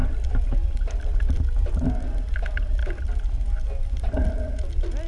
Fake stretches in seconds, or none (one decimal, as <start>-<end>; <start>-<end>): none

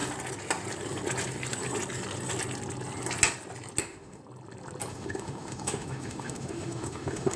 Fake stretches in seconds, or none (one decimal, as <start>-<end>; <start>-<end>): 3.8-4.2; 4.9-7.4

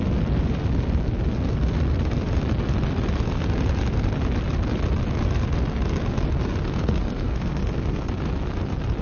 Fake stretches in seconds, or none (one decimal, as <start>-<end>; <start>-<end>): 6.8-8.0

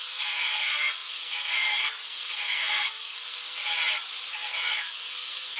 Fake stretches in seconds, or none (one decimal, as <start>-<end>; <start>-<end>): 0.0-3.6; 4.3-5.6

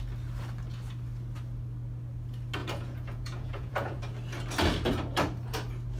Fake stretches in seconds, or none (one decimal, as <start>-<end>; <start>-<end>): 2.6-4.0

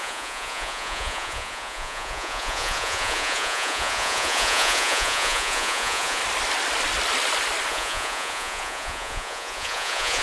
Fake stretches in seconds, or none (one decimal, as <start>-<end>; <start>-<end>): 0.0-6.2; 7.7-10.2